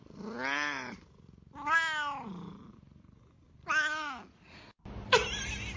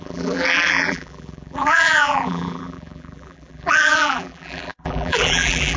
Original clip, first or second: first